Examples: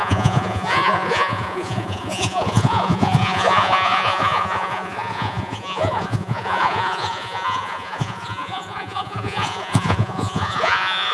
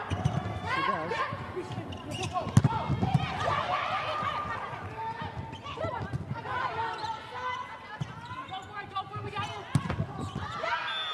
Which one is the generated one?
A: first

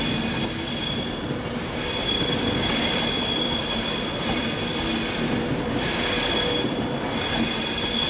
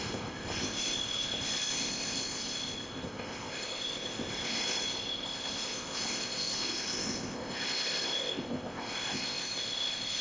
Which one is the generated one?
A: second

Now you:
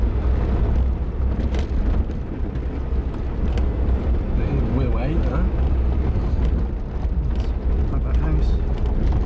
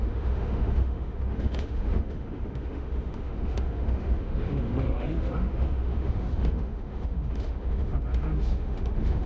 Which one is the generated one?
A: second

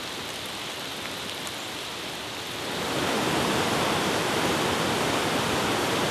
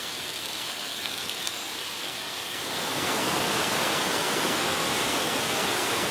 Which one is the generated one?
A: second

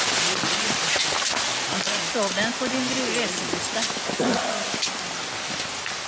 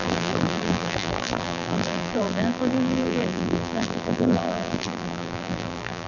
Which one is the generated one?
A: second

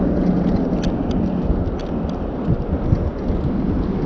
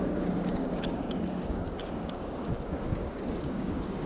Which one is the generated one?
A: second